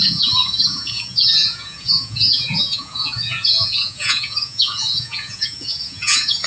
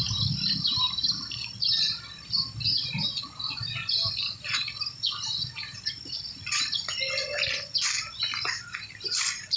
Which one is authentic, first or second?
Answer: second